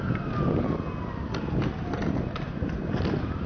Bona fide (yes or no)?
yes